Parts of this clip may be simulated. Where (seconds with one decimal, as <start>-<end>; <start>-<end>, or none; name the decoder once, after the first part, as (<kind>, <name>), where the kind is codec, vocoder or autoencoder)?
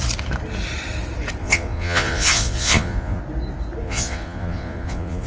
1.4-3.2 (vocoder, Vocos); 3.8-5.3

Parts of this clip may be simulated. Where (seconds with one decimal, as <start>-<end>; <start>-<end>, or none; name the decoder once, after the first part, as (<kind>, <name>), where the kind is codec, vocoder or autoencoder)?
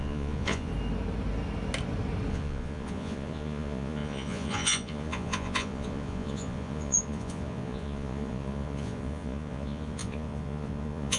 0.0-0.7 (vocoder, Vocos); 2.3-11.2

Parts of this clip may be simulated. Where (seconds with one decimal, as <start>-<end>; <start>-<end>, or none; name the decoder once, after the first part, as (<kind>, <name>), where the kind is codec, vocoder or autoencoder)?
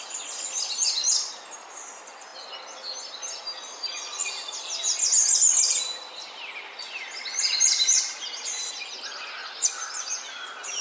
none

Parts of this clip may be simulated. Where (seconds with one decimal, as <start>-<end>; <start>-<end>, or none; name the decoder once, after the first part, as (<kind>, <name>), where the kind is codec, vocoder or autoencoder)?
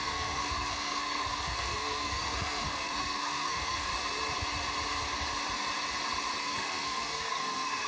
0.0-3.9 (codec, SNAC); 6.4-7.9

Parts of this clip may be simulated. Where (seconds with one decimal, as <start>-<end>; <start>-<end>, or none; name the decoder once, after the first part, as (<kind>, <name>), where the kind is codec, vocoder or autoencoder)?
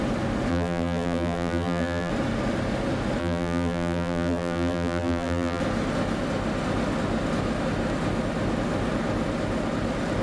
0.5-2.1 (vocoder, BigVGAN v2); 3.2-5.6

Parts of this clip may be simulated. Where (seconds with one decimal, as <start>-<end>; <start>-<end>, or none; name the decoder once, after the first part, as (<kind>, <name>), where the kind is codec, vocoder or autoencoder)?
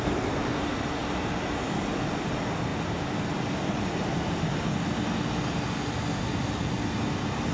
2.7-4.6 (vocoder, BigVGAN v2)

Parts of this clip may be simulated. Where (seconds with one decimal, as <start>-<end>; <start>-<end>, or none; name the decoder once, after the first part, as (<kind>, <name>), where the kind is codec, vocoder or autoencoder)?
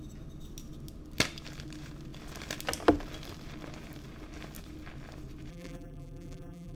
5.5-6.8 (vocoder, BigVGAN v2)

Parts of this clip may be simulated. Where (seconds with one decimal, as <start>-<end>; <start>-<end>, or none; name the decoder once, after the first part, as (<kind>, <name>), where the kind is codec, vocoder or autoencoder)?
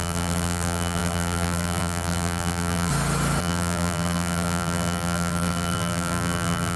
0.0-2.9 (vocoder, BigVGAN v2); 3.4-6.8